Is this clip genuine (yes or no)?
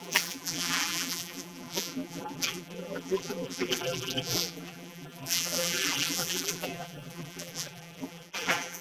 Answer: no